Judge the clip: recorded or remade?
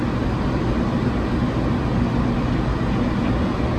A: recorded